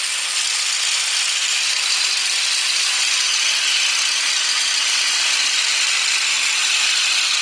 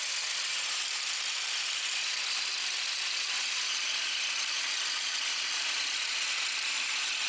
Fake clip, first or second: second